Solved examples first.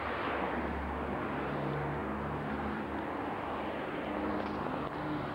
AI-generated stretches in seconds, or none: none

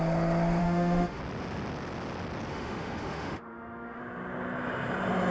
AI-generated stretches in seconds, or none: 0.6-1.2 (autoencoder, DAC-VAE); 2.5-4.0